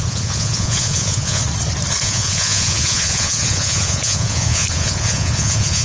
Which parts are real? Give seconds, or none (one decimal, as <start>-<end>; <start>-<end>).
1.4-2.0